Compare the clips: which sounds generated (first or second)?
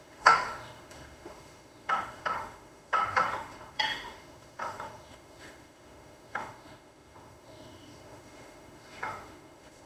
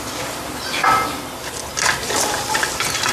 first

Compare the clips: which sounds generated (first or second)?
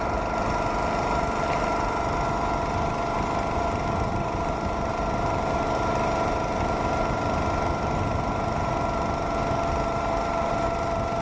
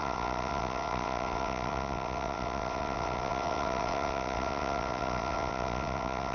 second